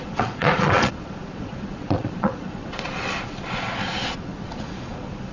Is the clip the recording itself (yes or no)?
no